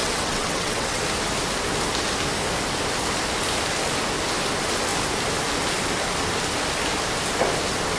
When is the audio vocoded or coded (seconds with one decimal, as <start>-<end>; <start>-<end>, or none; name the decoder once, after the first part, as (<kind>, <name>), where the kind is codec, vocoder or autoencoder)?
0.0-1.0 (vocoder, WaveNeXt)